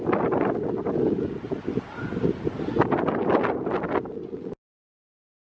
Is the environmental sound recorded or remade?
recorded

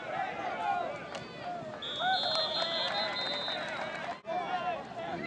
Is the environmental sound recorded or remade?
recorded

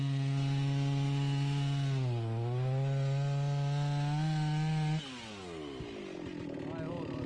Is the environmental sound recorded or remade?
recorded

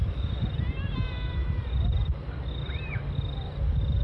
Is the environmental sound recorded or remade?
remade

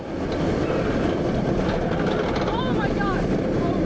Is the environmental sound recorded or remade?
recorded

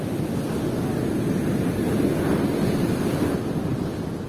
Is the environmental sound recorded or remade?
recorded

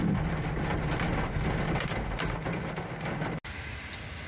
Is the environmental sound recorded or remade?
recorded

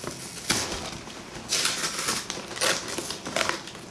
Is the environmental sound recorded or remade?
recorded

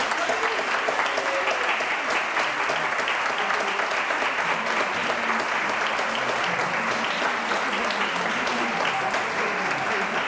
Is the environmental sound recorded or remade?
recorded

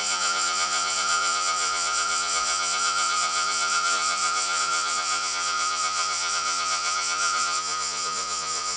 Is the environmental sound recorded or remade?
remade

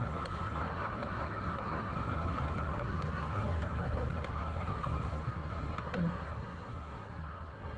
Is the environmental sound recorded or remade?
remade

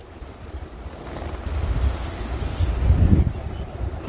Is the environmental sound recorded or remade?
recorded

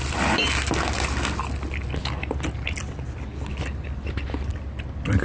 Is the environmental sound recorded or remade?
recorded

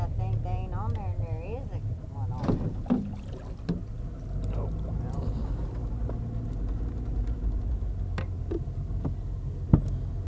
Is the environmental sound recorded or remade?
recorded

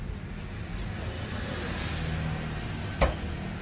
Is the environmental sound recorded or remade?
recorded